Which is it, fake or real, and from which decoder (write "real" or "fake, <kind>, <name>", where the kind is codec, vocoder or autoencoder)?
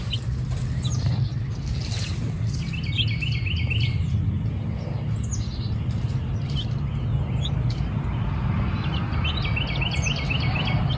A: real